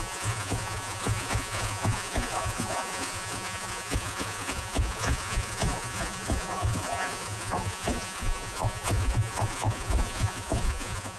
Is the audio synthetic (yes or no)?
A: yes